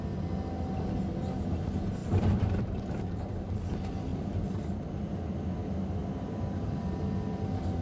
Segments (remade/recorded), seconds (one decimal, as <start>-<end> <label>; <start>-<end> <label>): 0.0-2.0 recorded; 2.0-3.3 remade; 3.3-4.1 recorded; 4.1-4.9 remade; 4.9-6.0 recorded; 6.0-7.3 remade; 7.3-7.8 recorded